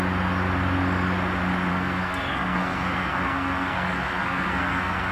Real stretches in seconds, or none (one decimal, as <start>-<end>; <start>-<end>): 0.0-1.7